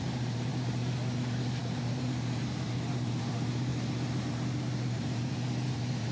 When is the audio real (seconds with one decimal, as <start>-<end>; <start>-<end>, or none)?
0.5-1.6; 3.7-4.8